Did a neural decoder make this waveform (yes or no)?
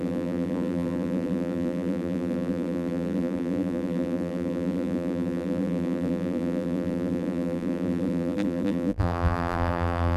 yes